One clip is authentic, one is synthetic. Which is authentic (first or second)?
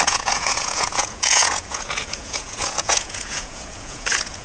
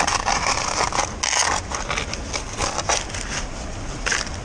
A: second